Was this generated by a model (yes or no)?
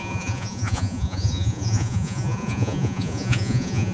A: yes